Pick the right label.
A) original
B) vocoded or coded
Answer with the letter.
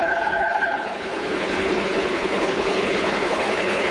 B